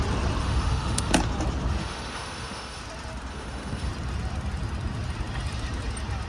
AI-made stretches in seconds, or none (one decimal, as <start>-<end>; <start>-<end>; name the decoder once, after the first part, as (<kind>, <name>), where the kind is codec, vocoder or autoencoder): 0.4-1.1 (autoencoder, DAC-VAE); 1.8-2.8; 3.3-3.9